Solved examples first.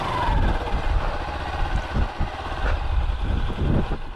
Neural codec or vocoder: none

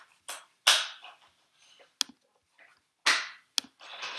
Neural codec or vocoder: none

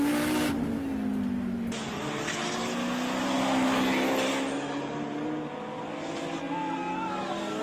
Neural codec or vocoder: none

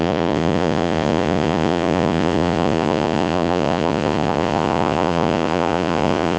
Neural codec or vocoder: vocoder, Vocos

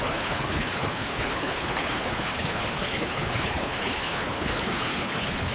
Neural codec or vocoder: codec, HILCodec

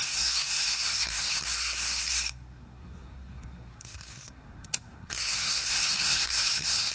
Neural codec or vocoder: codec, SNAC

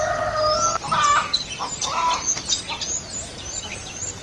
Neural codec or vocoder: none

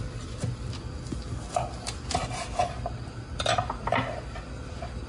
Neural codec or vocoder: none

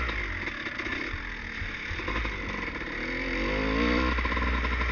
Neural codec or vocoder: none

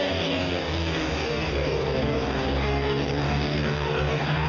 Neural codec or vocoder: codec, DAC